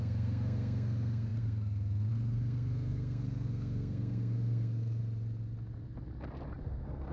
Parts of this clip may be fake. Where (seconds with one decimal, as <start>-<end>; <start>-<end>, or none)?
0.0-5.0; 6.6-7.1